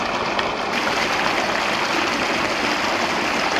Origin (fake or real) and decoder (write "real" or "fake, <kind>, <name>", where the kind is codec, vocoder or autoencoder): real